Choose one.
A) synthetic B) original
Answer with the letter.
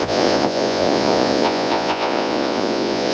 A